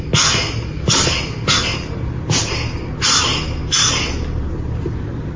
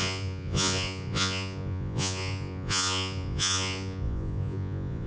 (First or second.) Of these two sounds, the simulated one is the second